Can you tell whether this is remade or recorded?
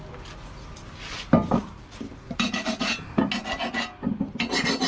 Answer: recorded